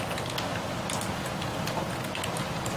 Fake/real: real